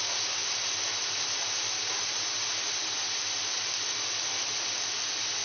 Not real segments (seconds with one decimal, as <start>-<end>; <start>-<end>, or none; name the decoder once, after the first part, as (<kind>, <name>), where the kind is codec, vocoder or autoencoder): none